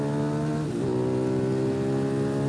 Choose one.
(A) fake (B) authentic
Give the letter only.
B